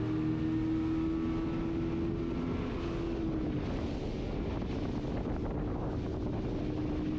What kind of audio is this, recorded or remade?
recorded